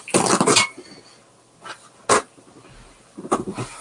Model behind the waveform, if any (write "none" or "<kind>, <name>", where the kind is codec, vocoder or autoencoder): none